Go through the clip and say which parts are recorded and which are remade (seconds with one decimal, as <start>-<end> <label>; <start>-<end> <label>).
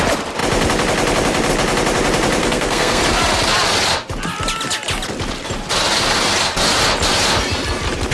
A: 0.0-2.4 recorded; 2.4-3.0 remade; 3.0-8.1 recorded